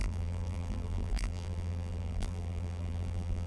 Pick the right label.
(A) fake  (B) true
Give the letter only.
A